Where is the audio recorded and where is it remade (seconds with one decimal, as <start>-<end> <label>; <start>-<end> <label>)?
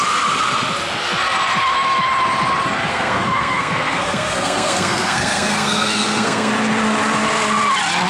0.0-2.9 recorded; 2.9-6.5 remade; 6.5-8.1 recorded